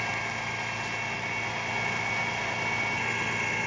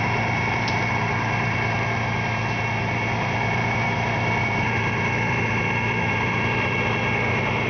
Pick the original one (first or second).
first